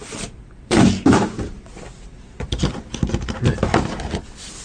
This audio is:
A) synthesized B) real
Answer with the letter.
A